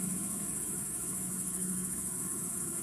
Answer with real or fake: fake